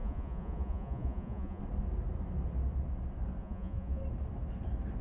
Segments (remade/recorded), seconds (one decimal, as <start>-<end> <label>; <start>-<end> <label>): 0.0-1.6 remade; 1.6-3.4 recorded; 3.4-4.0 remade; 4.0-5.0 recorded

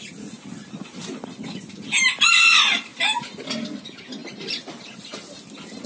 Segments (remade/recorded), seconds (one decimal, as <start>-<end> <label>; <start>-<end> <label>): 0.0-5.9 recorded

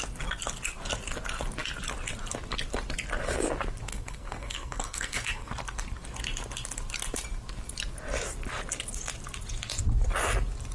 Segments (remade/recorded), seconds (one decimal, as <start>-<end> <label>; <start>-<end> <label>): 0.0-3.9 recorded; 3.9-5.5 remade; 5.5-10.7 recorded

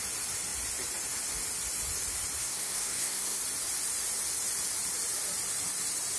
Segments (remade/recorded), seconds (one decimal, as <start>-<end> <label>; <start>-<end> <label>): 0.0-2.4 recorded; 2.4-3.4 remade; 3.4-6.2 recorded